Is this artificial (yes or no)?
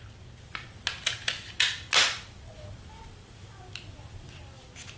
no